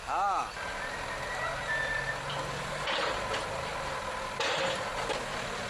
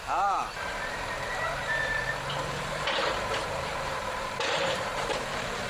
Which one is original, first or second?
first